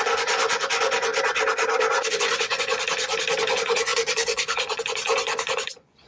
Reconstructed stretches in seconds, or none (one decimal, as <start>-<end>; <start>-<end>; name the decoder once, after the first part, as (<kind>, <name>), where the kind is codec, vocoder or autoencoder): 0.0-1.1 (vocoder, Vocos); 2.1-2.7; 3.4-6.1